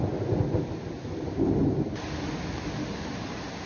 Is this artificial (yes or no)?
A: no